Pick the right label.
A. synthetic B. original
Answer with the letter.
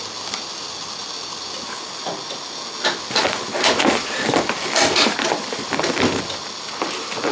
B